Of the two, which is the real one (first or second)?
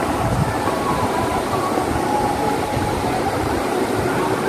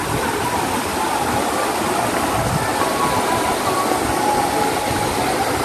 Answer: second